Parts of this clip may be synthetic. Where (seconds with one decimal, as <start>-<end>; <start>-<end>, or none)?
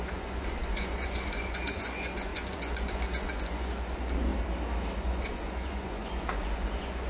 0.0-4.3; 5.0-7.1